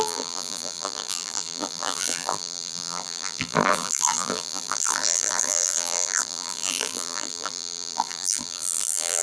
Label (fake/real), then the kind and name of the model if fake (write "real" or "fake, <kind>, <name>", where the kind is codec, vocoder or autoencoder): fake, vocoder, BigVGAN v2